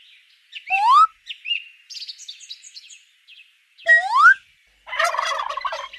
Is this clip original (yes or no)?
yes